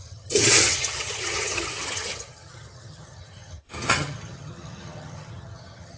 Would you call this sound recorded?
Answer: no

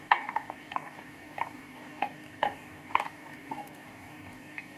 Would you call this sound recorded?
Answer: no